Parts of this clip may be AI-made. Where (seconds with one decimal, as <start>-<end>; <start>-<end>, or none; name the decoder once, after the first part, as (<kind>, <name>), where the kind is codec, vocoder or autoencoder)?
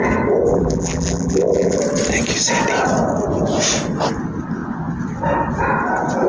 0.5-1.8 (vocoder, BigVGAN v2)